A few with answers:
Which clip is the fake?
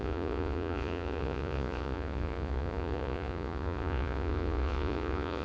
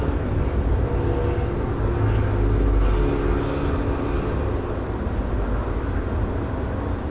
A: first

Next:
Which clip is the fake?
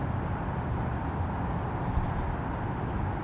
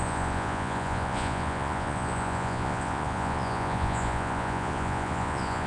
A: second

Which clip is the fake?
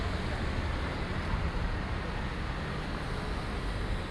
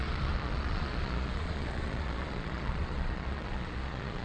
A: second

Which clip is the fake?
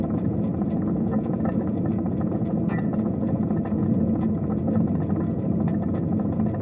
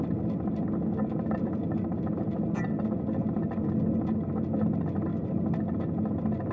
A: first